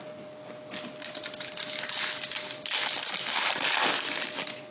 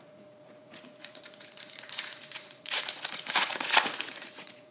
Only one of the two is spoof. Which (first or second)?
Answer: second